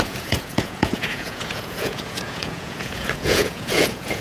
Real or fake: fake